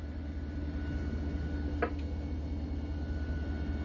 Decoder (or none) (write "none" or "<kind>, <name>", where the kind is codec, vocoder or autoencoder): none